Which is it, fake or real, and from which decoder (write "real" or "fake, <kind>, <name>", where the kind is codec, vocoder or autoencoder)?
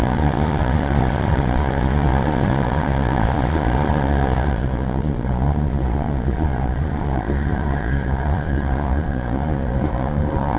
fake, vocoder, Vocos